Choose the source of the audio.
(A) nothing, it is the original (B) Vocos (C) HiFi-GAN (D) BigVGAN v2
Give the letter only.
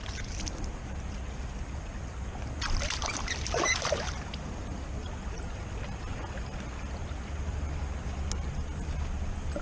A